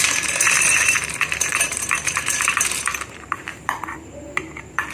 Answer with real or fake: fake